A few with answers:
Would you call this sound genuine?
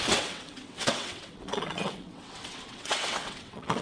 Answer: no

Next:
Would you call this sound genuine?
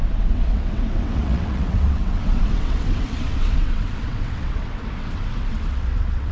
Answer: no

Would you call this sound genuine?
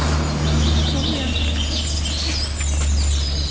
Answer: yes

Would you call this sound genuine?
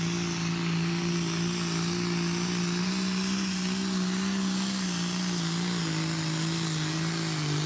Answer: yes